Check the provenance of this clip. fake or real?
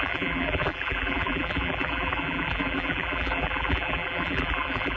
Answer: fake